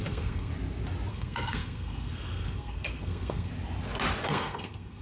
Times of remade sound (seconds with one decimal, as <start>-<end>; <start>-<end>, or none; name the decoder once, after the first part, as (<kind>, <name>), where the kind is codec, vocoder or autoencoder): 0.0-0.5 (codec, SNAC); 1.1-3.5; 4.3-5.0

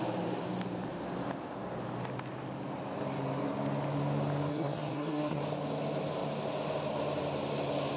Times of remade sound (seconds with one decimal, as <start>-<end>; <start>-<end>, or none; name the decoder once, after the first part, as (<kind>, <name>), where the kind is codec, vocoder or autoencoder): 4.5-5.4 (codec, SNAC)

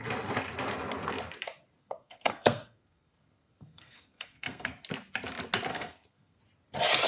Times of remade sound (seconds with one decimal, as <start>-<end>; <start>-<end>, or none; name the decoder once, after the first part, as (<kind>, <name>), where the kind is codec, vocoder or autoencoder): 1.8-4.7 (codec, SNAC); 5.7-6.4